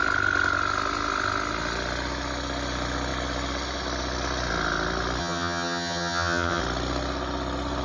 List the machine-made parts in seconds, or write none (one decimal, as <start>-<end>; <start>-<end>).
5.2-6.6